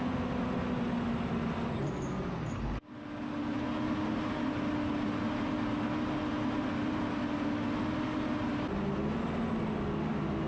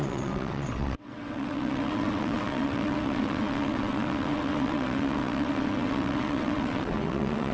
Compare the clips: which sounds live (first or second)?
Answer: first